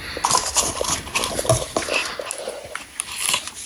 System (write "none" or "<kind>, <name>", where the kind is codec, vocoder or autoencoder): none